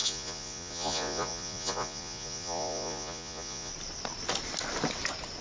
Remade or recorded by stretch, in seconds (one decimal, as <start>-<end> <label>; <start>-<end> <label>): 0.0-3.7 remade; 3.7-5.4 recorded